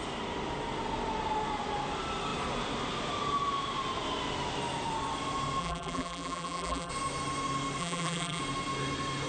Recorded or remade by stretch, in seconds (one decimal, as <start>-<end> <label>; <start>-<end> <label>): 0.0-5.6 recorded; 5.6-6.9 remade; 6.9-7.8 recorded; 7.8-8.4 remade; 8.4-9.3 recorded